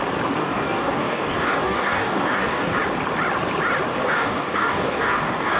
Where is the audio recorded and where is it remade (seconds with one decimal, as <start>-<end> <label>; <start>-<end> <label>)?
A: 0.0-0.4 recorded; 0.4-2.8 remade; 2.8-4.0 recorded; 4.0-5.6 remade